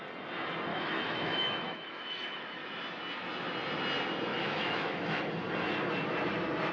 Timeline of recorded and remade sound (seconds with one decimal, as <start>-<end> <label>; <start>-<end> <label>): 0.0-0.7 recorded; 0.7-2.8 remade; 2.8-4.3 recorded; 4.3-5.2 remade; 5.2-6.7 recorded